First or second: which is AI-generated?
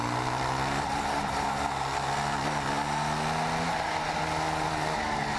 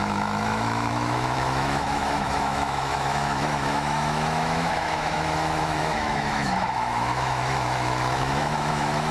second